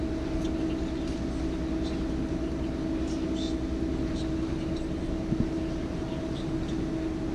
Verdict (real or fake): real